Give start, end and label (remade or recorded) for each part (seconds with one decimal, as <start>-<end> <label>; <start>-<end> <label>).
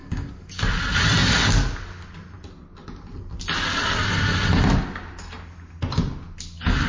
0.0-0.6 remade; 0.6-6.9 recorded